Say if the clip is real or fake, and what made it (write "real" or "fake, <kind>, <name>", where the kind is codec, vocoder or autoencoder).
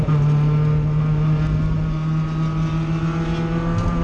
real